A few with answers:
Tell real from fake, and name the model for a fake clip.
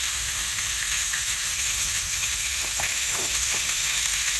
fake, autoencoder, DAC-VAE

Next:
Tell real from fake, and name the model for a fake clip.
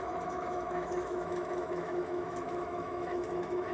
fake, autoencoder, DAC-VAE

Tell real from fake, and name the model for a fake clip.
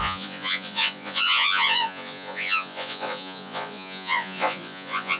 fake, vocoder, Vocos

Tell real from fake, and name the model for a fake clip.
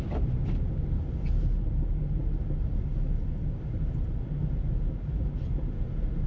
real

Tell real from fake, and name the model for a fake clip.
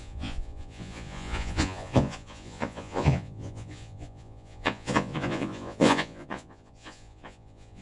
fake, vocoder, Vocos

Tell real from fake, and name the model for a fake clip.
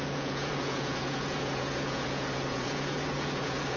fake, vocoder, Vocos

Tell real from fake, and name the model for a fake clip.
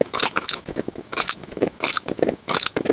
fake, autoencoder, DAC-VAE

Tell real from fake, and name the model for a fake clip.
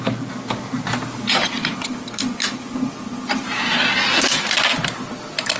real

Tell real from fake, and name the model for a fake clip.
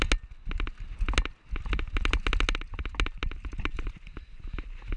real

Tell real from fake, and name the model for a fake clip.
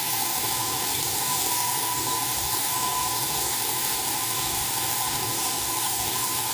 fake, codec, DAC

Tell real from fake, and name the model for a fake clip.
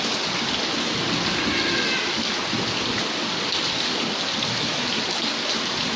real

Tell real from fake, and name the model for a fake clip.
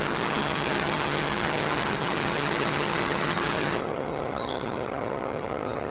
fake, vocoder, HiFi-GAN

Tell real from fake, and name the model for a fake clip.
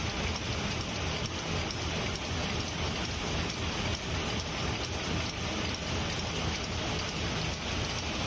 real